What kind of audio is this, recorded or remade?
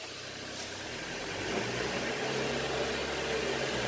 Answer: recorded